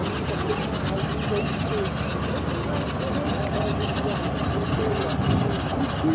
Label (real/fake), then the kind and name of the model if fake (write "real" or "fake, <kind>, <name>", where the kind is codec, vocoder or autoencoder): real